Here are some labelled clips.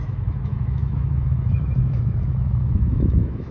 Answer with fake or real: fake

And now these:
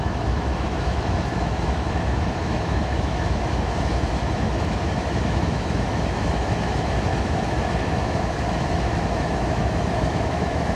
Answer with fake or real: fake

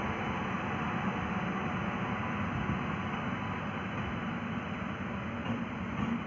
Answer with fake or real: real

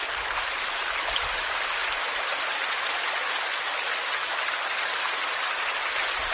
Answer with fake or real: real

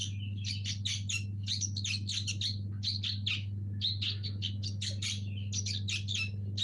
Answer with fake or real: real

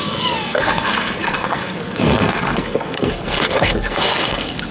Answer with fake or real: fake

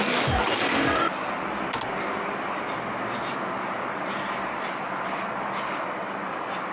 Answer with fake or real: real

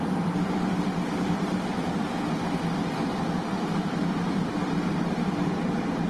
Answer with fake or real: real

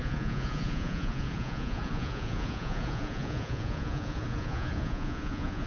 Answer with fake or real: fake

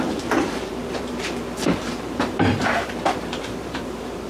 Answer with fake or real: fake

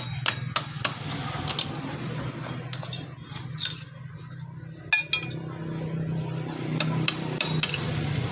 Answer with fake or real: real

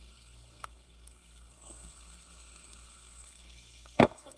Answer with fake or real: fake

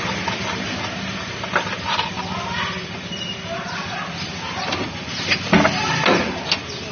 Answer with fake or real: real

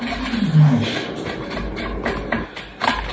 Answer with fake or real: real